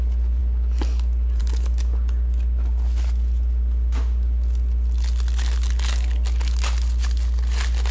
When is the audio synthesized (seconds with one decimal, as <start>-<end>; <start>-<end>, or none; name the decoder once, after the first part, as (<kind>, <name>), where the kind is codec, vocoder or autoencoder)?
none